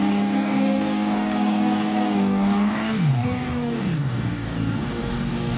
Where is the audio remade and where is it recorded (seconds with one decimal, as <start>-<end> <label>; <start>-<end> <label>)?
0.0-5.6 remade